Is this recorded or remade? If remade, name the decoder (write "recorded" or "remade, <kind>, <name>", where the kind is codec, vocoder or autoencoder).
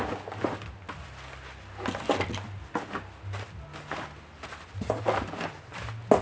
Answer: recorded